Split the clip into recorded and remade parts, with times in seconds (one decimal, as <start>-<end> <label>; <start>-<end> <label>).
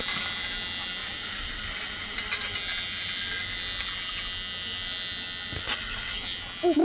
0.0-1.0 recorded; 1.0-2.2 remade; 2.2-6.8 recorded